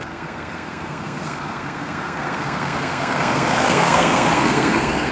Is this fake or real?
fake